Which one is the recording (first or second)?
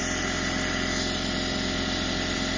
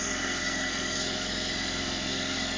first